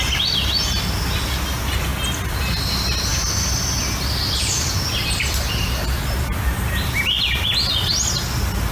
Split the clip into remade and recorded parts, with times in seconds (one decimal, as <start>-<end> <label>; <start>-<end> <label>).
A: 0.0-8.7 recorded